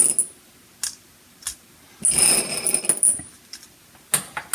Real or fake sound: real